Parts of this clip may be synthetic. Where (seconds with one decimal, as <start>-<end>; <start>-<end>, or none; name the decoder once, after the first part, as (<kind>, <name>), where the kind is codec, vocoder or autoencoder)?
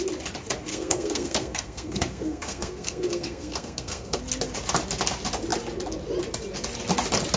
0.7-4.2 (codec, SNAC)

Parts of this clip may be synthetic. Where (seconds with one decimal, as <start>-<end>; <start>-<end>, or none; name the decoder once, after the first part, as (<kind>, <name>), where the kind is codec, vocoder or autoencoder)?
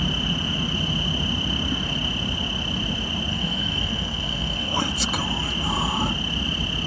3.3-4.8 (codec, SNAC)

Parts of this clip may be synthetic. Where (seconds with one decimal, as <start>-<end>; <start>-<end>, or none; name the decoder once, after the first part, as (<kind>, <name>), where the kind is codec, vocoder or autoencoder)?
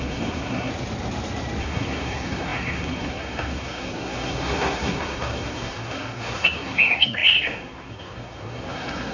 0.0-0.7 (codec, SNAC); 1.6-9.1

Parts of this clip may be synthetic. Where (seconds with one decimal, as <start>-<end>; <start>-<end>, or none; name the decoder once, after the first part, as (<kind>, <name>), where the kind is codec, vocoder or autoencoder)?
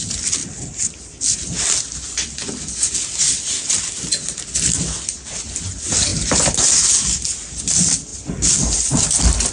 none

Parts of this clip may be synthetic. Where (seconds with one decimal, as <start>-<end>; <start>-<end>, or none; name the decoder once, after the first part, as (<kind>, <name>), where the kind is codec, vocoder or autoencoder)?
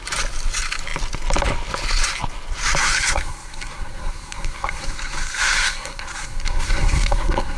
2.8-7.6 (codec, SNAC)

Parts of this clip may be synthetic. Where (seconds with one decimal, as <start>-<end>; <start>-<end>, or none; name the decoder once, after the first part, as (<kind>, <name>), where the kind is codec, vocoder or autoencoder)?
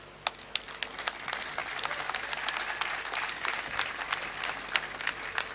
none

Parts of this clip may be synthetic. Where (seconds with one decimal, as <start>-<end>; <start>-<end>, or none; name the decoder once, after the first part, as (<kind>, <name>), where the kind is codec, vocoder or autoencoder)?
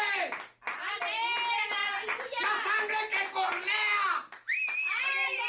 none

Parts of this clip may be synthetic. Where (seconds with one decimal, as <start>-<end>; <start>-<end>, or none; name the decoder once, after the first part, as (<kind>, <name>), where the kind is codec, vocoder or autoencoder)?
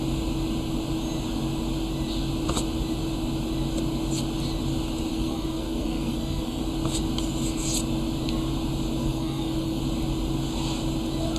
5.1-6.6 (codec, SNAC); 9.0-9.8